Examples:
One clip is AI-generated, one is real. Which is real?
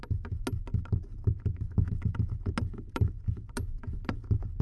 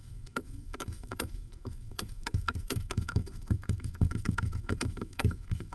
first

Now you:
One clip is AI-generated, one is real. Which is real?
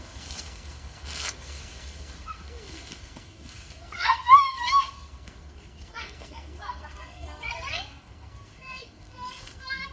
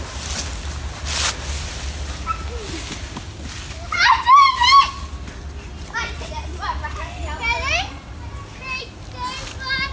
second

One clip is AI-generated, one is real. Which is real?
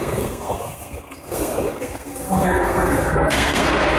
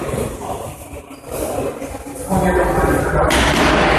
second